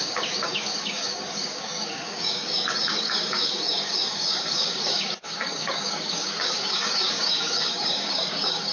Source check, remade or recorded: remade